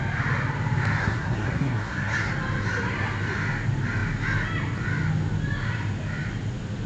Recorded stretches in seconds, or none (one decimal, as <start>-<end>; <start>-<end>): 0.0-1.0; 2.3-6.9